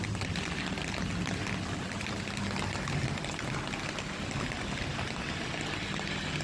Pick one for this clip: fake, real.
real